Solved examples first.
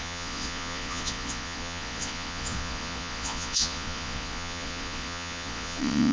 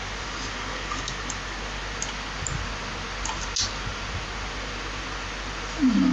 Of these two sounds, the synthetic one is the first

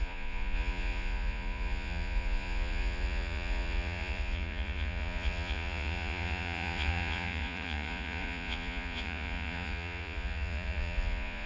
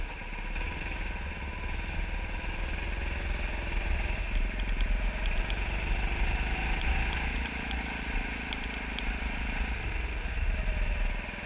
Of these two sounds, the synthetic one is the first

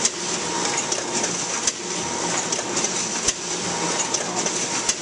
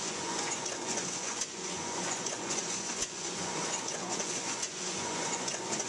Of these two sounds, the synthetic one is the second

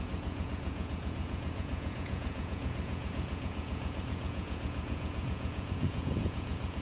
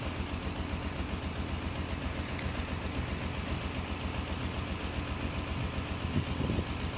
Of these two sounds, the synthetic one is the first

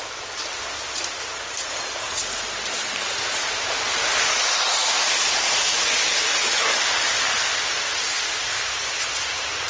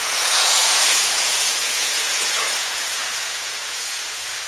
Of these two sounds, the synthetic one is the second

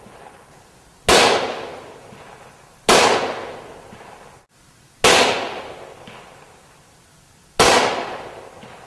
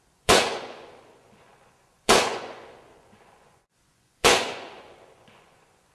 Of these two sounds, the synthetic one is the second